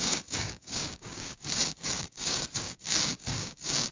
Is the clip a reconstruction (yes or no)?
yes